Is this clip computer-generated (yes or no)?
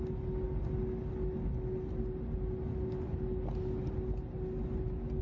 no